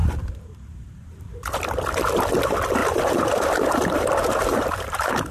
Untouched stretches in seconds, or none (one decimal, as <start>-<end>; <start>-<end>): 1.8-2.8